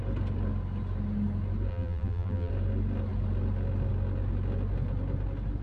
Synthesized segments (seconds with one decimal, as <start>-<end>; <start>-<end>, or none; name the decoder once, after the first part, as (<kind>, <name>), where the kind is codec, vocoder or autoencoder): 1.7-2.5 (vocoder, BigVGAN v2)